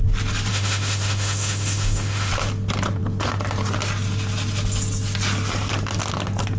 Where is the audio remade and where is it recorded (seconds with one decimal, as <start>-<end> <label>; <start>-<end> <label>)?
0.0-0.5 recorded; 0.5-2.3 remade; 2.3-6.6 recorded